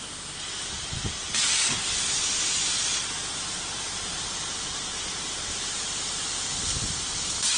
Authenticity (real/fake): real